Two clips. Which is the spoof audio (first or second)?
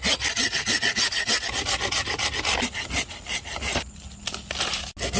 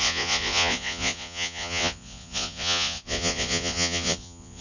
second